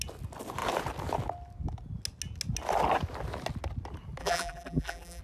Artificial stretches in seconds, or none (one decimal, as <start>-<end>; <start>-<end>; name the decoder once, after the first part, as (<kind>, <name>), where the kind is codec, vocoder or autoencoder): 4.2-5.2 (vocoder, BigVGAN v2)